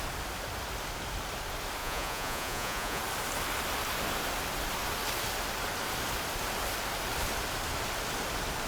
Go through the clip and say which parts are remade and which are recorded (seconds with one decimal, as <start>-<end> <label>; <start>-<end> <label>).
0.0-1.8 recorded; 1.8-3.0 remade; 3.0-8.7 recorded